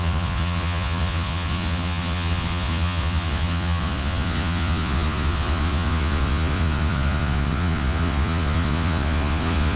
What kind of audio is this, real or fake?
fake